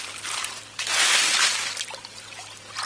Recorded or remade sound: recorded